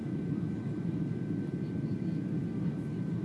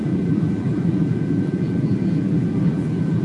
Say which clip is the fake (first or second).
second